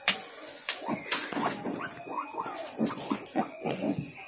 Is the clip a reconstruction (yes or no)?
yes